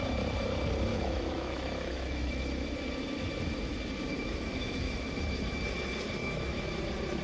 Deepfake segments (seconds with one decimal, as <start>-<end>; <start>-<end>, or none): 0.9-2.4; 4.1-5.1; 6.2-6.7